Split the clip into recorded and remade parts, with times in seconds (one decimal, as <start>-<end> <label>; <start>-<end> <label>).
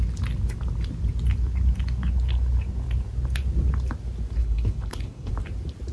0.0-4.4 recorded; 4.4-5.3 remade; 5.3-5.9 recorded